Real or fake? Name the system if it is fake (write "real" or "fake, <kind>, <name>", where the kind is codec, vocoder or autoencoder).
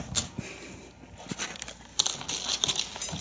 real